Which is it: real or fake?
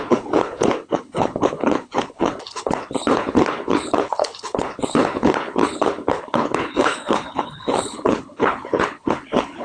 fake